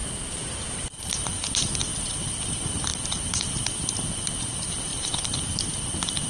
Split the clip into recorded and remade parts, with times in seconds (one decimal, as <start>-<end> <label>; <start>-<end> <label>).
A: 0.0-1.1 remade; 1.1-2.9 recorded; 2.9-3.5 remade; 3.5-4.9 recorded; 4.9-5.4 remade; 5.4-6.3 recorded